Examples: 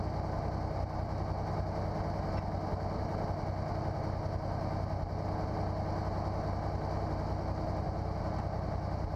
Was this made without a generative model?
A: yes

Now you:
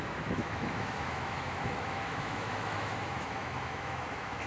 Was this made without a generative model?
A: no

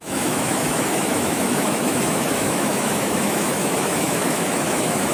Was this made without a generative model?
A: no